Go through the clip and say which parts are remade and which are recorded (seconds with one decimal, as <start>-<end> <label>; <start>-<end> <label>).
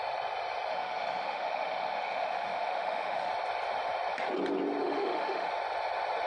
0.0-0.7 recorded; 0.7-3.3 remade; 3.3-4.8 recorded; 4.8-5.5 remade; 5.5-6.3 recorded